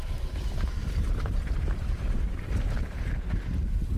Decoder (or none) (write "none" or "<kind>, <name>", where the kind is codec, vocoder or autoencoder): vocoder, BigVGAN v2